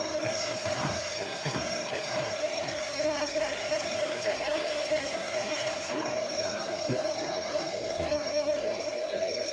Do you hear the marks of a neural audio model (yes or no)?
yes